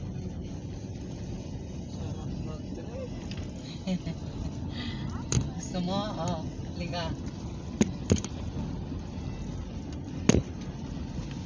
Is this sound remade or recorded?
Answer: recorded